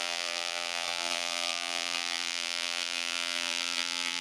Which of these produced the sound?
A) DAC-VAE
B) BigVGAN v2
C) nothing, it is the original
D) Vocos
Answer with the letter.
B